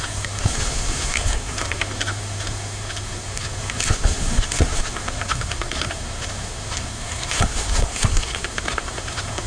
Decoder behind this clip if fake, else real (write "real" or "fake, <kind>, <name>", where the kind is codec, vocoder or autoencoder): fake, codec, SNAC